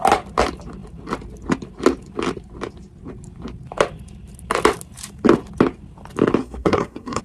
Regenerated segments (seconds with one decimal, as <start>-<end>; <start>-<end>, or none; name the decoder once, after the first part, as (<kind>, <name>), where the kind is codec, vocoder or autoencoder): 6.4-7.2 (codec, SNAC)